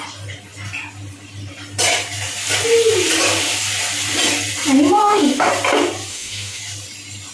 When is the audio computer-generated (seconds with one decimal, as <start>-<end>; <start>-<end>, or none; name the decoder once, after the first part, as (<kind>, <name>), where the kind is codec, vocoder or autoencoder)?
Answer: 5.0-5.5 (autoencoder, DAC-VAE); 6.1-6.6